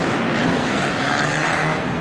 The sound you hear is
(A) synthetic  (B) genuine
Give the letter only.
A